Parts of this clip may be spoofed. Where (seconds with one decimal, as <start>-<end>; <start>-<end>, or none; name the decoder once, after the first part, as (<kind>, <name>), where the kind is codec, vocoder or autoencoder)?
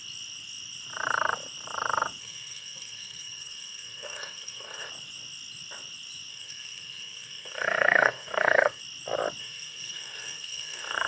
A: 2.2-4.9 (codec, SNAC); 6.3-8.8; 9.4-11.1